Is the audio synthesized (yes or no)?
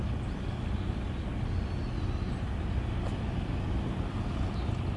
no